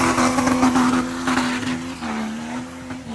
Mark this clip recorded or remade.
recorded